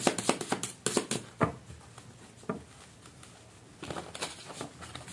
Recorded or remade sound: recorded